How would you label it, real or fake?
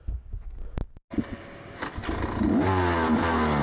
real